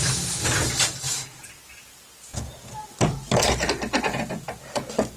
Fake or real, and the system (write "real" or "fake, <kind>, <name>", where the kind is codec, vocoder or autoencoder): real